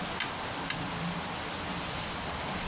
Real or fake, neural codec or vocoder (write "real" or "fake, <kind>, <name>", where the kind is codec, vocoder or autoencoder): real